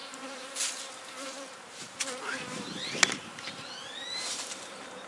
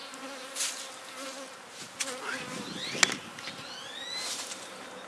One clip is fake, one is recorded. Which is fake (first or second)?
first